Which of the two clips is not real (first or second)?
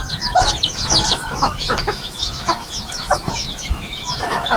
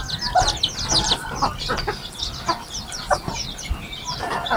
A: first